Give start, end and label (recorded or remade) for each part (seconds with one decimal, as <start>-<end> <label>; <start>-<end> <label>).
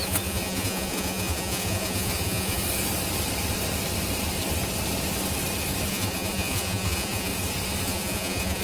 0.0-2.6 remade; 2.6-5.9 recorded; 5.9-7.3 remade; 7.3-7.8 recorded; 7.8-8.6 remade